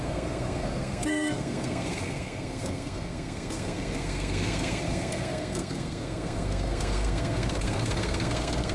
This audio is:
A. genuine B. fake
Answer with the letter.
B